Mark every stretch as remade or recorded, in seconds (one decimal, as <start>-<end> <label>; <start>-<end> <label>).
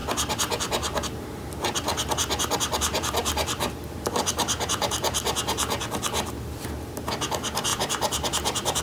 0.0-3.2 recorded; 3.2-5.8 remade; 5.8-7.7 recorded; 7.7-8.8 remade